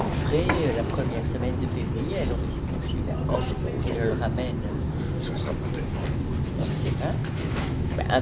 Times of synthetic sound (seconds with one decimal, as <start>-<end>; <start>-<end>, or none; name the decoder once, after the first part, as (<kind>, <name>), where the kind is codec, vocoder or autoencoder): 7.2-8.2 (autoencoder, DAC-VAE)